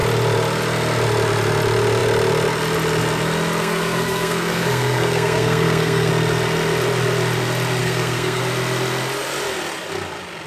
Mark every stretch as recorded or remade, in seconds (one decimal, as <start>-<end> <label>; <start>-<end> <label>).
0.0-3.6 recorded; 3.6-6.1 remade; 6.1-7.8 recorded; 7.8-8.4 remade; 8.4-10.5 recorded